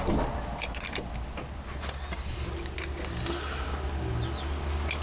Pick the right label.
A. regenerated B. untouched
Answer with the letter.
B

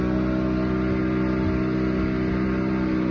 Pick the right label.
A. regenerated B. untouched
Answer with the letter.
B